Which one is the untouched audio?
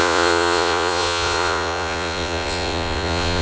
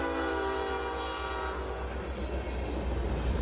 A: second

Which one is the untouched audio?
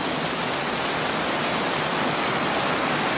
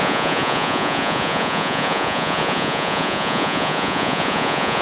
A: first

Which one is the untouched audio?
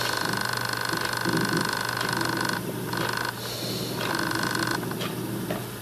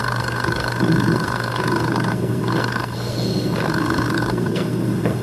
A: first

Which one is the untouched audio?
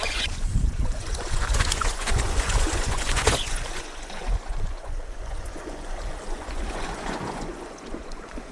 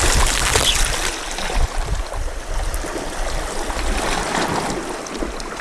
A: second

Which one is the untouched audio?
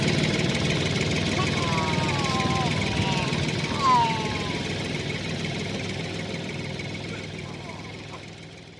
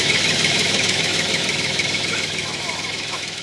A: first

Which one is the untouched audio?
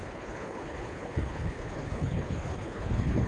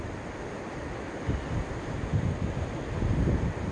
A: second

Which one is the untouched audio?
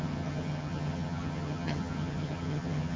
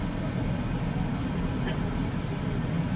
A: second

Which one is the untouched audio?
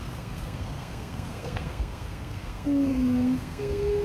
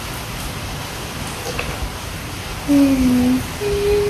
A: second